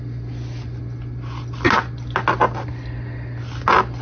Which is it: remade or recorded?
recorded